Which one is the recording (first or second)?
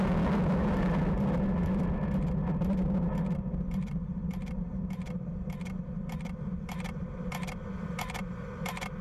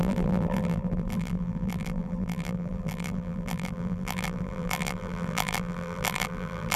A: first